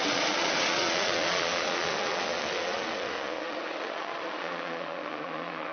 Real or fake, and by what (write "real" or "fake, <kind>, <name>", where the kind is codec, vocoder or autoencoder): fake, vocoder, Vocos